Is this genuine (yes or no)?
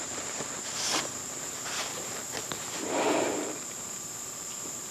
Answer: no